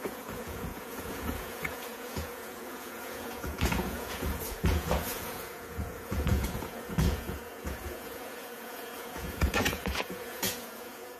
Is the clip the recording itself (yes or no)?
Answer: no